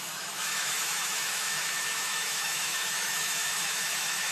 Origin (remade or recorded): remade